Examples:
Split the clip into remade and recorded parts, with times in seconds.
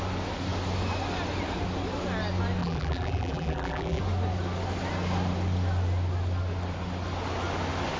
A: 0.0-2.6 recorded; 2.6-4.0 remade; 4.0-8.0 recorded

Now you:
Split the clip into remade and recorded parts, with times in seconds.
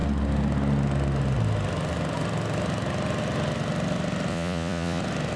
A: 0.0-4.3 recorded; 4.3-5.0 remade; 5.0-5.4 recorded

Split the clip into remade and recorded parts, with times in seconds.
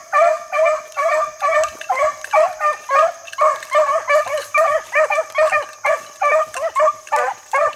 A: 0.0-4.4 recorded; 4.4-5.9 remade; 5.9-7.8 recorded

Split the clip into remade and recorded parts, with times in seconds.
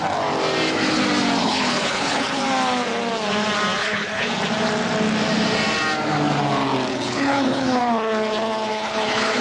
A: 0.0-1.4 recorded; 1.4-2.4 remade; 2.4-3.8 recorded; 3.8-4.3 remade; 4.3-6.9 recorded; 6.9-7.8 remade; 7.8-8.7 recorded; 8.7-9.4 remade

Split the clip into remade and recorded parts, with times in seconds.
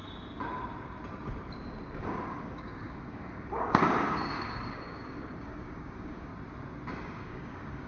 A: 0.0-2.0 recorded; 2.0-6.3 remade; 6.3-7.0 recorded; 7.0-7.9 remade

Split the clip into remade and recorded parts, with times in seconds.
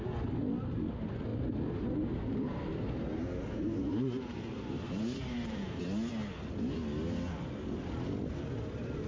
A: 0.0-1.3 recorded; 1.3-5.8 remade; 5.8-9.1 recorded